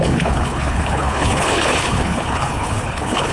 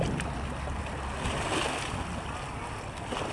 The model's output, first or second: first